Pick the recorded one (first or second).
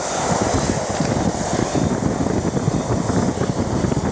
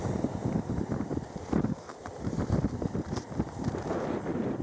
first